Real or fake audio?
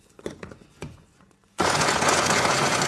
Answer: fake